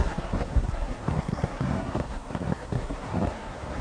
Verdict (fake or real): fake